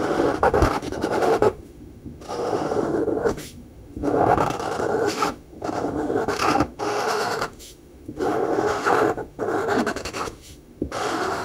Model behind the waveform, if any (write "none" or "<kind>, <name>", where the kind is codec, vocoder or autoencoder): autoencoder, DAC-VAE